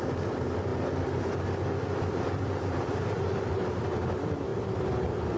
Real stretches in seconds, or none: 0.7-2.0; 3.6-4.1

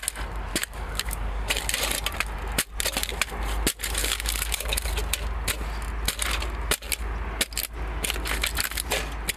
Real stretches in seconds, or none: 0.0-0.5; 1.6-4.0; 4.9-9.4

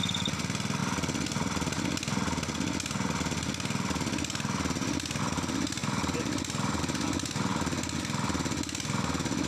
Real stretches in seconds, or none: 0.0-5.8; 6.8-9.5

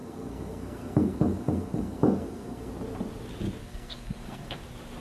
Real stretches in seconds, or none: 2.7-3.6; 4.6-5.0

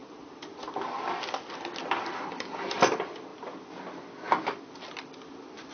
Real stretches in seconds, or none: 0.0-5.7

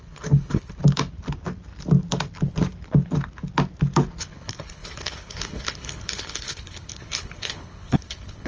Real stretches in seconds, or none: 0.8-4.2

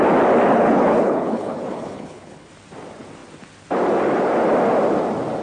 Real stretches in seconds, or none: 0.0-0.5; 2.5-5.4

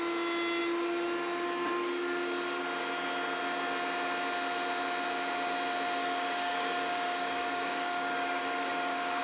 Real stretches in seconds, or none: 0.0-6.0